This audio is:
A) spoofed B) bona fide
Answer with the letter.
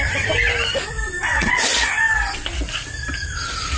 B